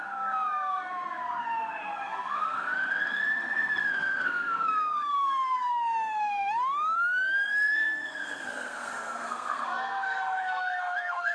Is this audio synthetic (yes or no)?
yes